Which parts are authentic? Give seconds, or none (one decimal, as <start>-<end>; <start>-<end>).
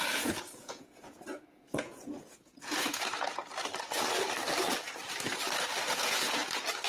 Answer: 3.4-6.0; 6.4-6.9